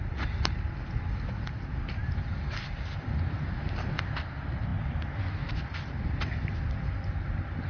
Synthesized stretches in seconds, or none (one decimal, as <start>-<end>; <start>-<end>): none